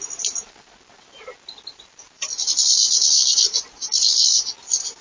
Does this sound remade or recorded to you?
recorded